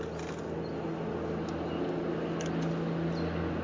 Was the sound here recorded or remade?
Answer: recorded